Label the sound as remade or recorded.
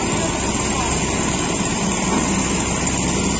recorded